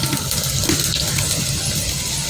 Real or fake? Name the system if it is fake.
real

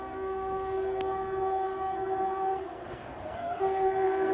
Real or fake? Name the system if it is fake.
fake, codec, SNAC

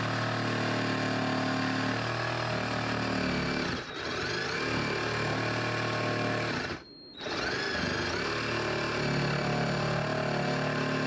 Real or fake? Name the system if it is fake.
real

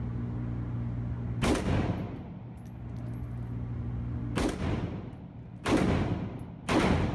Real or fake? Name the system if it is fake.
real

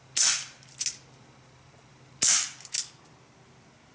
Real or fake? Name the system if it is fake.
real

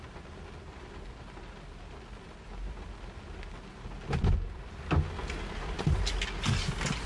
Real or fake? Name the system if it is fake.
real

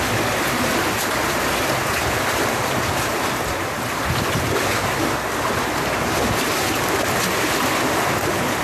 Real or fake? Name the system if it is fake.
real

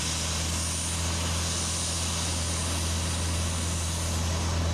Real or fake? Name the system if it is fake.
real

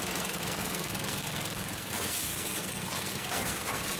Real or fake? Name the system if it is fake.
fake, codec, SNAC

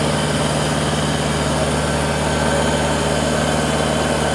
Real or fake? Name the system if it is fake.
real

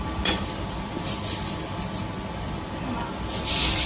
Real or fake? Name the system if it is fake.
real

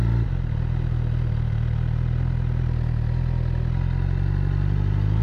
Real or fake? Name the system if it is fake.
real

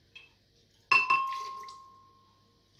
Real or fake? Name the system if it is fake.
real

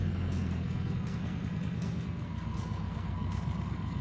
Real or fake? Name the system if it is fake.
fake, codec, SNAC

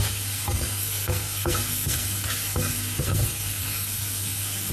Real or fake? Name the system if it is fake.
fake, codec, SNAC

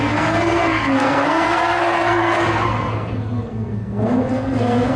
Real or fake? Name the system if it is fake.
fake, codec, SNAC